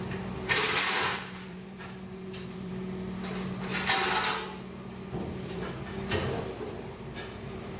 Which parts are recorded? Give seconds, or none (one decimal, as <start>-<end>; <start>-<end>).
0.0-1.1; 2.7-7.8